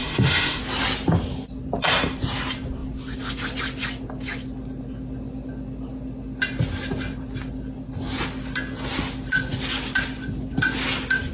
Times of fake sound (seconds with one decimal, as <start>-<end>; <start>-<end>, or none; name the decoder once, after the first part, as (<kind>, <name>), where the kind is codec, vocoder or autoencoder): 0.0-0.6 (autoencoder, DAC-VAE)